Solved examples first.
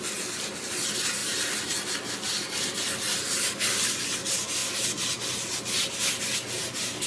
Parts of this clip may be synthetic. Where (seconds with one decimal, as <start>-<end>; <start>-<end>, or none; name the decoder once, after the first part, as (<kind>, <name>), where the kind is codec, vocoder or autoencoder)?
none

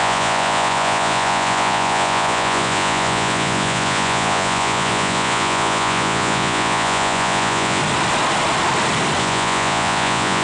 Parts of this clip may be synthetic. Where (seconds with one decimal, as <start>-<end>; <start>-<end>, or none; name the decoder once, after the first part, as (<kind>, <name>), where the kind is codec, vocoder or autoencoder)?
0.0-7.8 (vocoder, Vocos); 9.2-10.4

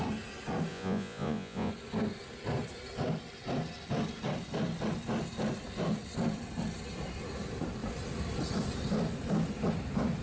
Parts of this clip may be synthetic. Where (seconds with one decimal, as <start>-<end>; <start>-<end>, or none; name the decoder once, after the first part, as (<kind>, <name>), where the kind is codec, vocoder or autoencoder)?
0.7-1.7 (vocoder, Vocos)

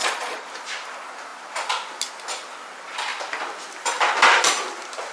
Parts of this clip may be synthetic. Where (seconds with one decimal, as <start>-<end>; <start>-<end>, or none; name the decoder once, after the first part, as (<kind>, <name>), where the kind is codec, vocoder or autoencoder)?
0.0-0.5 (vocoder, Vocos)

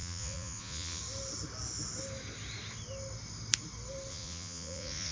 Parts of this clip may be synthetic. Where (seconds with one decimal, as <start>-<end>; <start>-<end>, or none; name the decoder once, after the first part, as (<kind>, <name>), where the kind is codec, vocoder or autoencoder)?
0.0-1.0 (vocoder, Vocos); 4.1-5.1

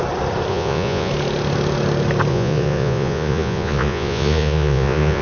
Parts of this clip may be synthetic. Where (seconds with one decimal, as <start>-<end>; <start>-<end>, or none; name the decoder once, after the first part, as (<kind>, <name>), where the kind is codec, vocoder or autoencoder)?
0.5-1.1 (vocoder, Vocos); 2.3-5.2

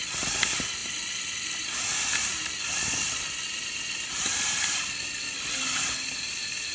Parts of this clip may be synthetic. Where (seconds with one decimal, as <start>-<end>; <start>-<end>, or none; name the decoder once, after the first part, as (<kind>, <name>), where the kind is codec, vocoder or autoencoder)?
none